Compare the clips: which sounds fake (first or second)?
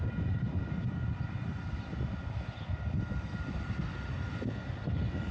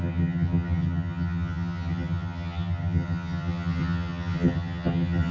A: second